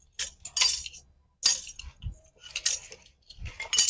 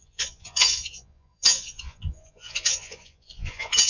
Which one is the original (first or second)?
first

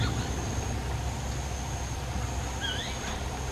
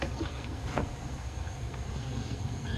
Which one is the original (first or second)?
first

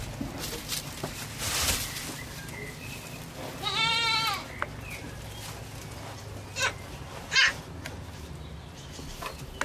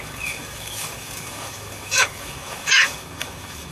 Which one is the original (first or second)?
first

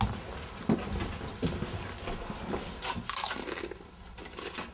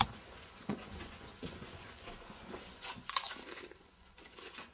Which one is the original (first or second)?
first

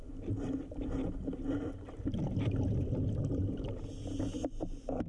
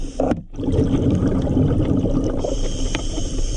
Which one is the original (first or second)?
first